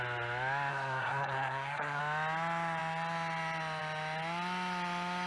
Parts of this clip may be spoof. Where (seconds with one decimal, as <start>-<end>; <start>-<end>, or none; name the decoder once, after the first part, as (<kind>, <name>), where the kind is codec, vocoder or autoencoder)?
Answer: 0.7-2.0 (codec, SNAC)